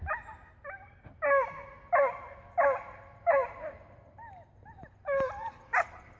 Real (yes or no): yes